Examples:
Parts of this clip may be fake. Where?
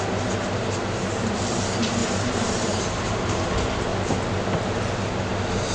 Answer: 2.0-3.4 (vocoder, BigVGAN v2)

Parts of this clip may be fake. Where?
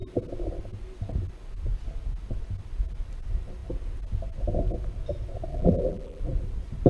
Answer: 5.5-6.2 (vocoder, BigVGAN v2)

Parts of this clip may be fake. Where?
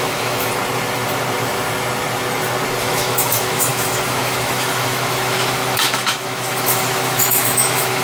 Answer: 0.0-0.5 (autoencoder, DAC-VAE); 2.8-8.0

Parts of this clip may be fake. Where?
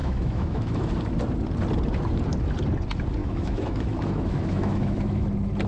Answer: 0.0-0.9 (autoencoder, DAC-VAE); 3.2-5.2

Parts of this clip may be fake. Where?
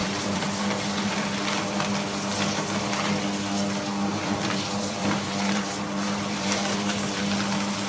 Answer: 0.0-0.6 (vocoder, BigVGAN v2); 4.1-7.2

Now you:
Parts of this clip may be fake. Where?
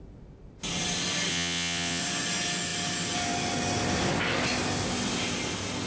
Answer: 1.3-2.0 (vocoder, WaveNeXt)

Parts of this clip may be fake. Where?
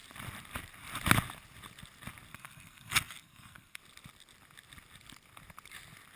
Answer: 2.3-3.8 (codec, SNAC)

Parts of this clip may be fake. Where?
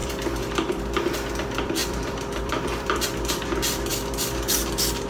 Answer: 0.0-3.9 (vocoder, BigVGAN v2)